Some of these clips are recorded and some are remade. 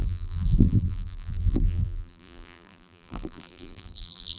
remade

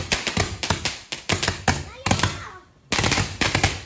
recorded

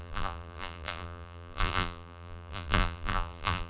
remade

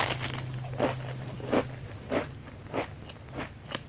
recorded